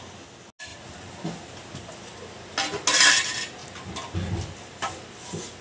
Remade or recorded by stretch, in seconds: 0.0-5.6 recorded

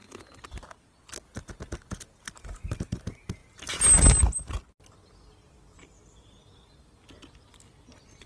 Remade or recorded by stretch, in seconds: 0.0-8.3 recorded

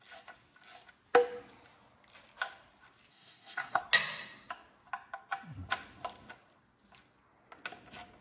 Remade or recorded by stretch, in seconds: 0.0-3.1 recorded; 3.1-3.8 remade; 3.8-8.2 recorded

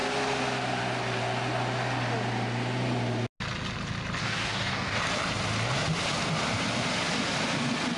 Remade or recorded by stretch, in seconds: 0.0-4.2 recorded; 4.2-5.0 remade; 5.0-8.0 recorded

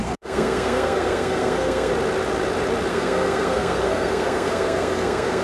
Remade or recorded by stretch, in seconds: 0.0-1.9 remade; 1.9-2.9 recorded; 2.9-5.4 remade

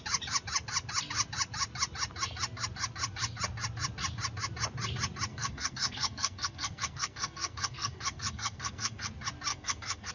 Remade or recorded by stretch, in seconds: 0.0-5.3 recorded; 5.3-9.1 remade; 9.1-9.5 recorded; 9.5-10.1 remade